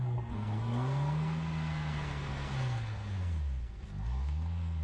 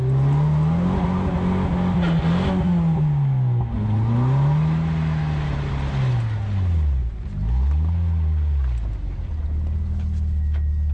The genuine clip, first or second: second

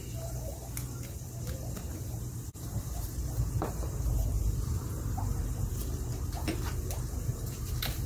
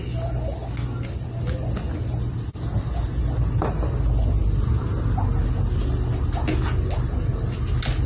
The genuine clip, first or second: second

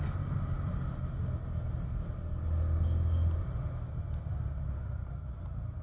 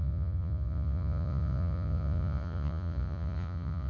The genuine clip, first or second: first